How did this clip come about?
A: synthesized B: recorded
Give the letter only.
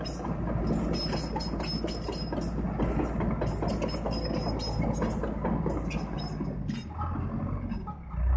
B